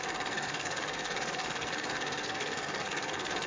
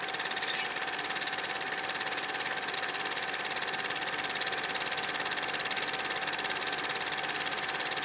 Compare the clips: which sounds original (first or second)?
second